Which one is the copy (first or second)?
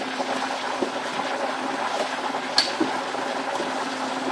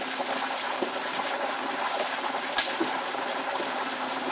second